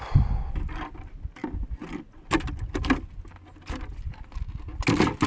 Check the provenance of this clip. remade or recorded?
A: recorded